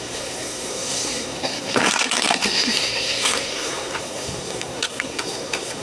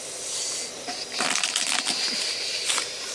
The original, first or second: second